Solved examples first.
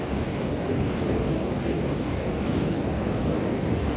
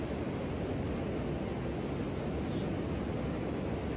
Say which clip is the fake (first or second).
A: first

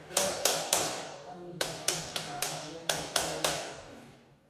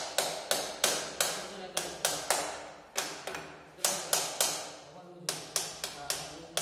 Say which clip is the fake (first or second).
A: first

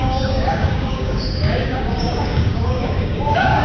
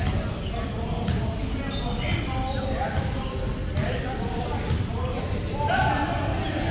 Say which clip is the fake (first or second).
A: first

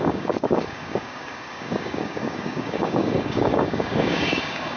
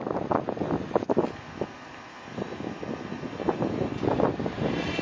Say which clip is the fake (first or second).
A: first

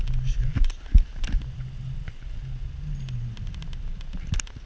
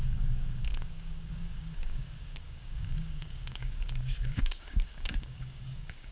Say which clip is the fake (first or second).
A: second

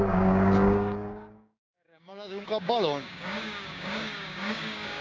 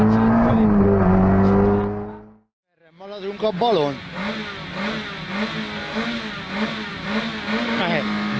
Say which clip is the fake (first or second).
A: first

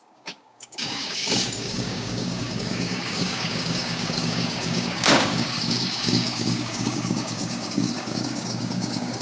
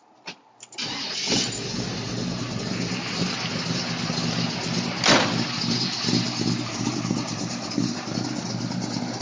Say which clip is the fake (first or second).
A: first